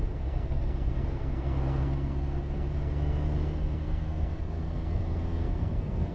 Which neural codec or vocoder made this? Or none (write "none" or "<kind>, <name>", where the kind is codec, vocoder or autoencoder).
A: codec, SNAC